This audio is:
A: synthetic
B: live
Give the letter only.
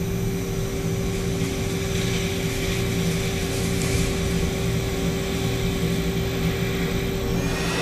B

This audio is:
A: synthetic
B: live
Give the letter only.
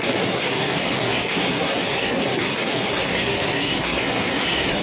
A